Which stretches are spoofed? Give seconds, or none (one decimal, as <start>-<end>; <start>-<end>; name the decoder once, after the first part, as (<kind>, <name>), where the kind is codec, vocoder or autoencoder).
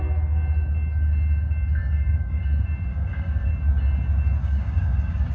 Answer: 1.8-2.4 (codec, DAC); 2.9-3.5; 4.4-5.3